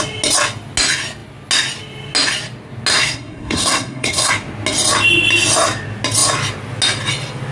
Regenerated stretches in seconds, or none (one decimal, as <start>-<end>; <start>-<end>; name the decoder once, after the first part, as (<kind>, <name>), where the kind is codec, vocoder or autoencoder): 2.9-4.3 (codec, SNAC)